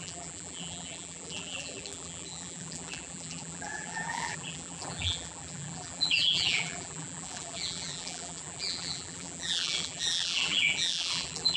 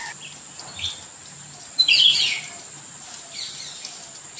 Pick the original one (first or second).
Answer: second